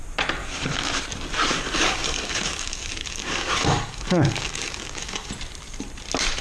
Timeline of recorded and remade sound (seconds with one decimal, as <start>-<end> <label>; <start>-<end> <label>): 0.0-0.4 recorded; 0.4-1.0 remade; 1.0-1.5 recorded; 1.5-5.3 remade; 5.3-6.4 recorded